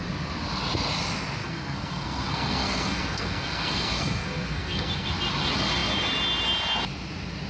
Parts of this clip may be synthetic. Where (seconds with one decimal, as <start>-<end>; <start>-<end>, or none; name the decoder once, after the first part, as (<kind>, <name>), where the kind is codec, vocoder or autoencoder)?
1.4-5.1 (codec, SNAC)